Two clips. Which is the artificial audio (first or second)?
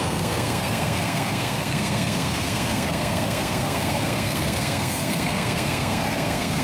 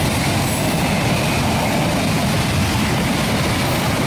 first